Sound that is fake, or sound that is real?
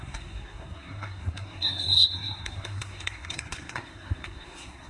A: fake